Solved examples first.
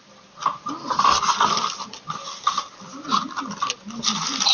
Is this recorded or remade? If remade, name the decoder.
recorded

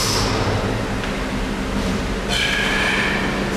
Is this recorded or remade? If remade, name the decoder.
recorded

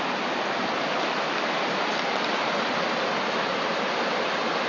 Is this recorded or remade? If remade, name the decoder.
recorded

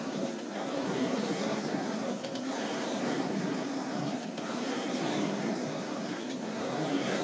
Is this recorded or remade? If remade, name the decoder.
remade, codec, SNAC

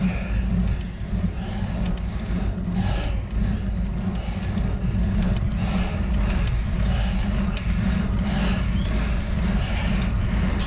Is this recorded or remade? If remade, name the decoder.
recorded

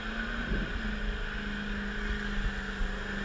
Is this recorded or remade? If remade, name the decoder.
recorded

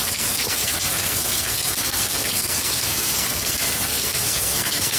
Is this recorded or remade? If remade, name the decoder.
remade, codec, SNAC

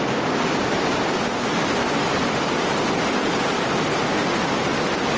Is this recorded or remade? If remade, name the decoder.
recorded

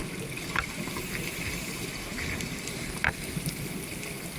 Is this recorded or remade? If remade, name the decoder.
recorded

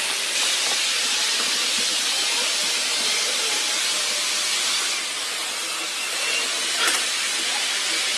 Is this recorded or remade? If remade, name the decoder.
recorded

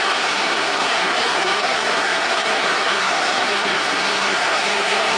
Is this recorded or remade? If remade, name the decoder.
remade, codec, SNAC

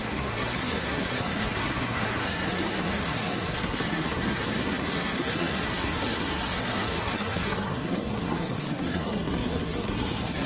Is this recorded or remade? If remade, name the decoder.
remade, codec, SNAC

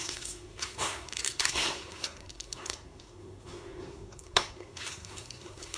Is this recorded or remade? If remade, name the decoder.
remade, codec, SNAC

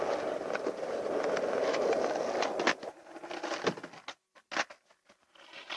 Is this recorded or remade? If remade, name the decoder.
recorded